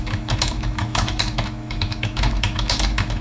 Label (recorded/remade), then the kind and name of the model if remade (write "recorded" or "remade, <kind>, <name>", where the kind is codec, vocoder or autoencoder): remade, autoencoder, DAC-VAE